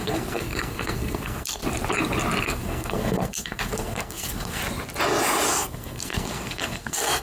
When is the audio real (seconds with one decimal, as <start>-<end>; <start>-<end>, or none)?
1.6-2.4; 4.6-5.5